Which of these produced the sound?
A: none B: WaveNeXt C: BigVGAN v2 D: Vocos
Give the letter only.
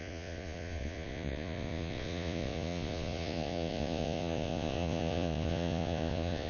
D